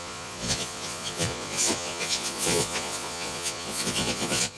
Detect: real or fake fake